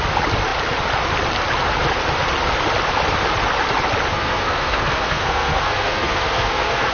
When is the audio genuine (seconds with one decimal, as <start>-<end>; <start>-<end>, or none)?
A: 0.0-4.1